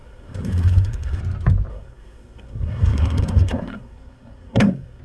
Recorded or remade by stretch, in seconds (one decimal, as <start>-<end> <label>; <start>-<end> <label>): 0.0-1.2 remade; 1.2-1.7 recorded; 1.7-5.0 remade

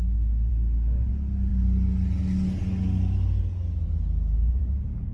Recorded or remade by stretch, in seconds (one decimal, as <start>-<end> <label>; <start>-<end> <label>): 0.0-5.1 recorded

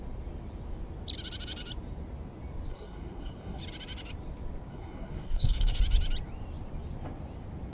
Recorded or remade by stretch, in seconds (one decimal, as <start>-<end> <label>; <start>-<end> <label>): 0.0-2.7 recorded; 2.7-3.6 remade; 3.6-4.7 recorded; 4.7-5.8 remade; 5.8-7.7 recorded

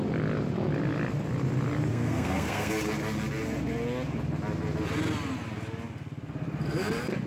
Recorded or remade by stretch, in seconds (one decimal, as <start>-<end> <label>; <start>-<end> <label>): 0.0-1.9 recorded; 1.9-2.7 remade; 2.7-7.3 recorded

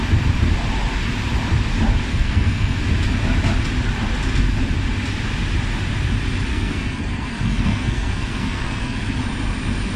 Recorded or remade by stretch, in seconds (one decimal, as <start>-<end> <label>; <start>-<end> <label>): 0.0-2.1 recorded; 2.1-2.8 remade; 2.8-6.5 recorded; 6.5-9.2 remade; 9.2-10.0 recorded

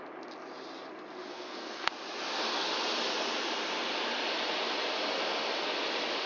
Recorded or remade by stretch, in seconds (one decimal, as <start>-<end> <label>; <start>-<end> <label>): 0.0-1.3 recorded; 1.3-1.9 remade; 1.9-6.3 recorded